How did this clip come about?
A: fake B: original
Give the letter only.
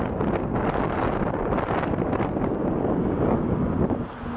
B